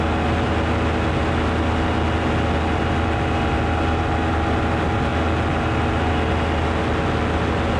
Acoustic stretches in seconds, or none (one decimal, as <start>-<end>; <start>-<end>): 0.0-7.8